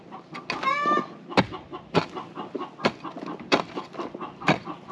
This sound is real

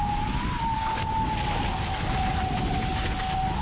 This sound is real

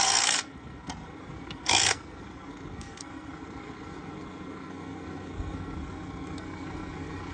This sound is fake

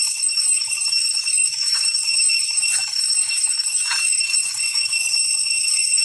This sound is fake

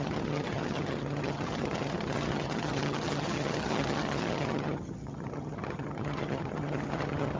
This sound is fake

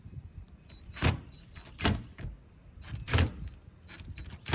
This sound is real